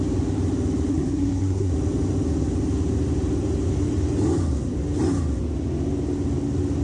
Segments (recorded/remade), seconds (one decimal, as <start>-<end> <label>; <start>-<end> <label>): 0.0-0.9 recorded; 0.9-1.7 remade; 1.7-6.8 recorded